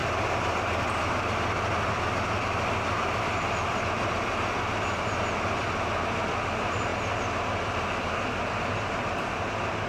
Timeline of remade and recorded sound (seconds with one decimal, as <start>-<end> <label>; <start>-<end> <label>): 0.0-9.9 recorded